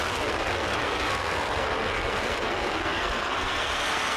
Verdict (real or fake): fake